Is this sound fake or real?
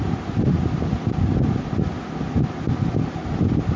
real